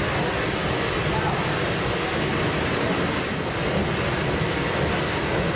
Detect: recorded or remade recorded